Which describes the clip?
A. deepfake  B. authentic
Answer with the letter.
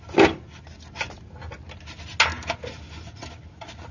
B